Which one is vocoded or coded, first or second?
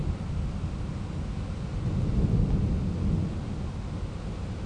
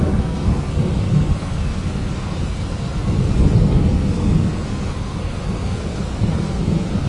second